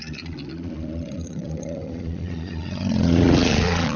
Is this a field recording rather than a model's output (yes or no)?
no